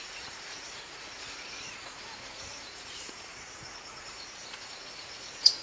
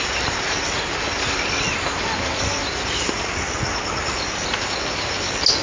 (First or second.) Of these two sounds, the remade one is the first